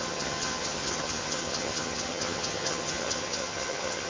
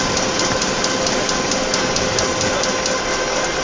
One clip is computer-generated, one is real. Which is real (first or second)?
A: second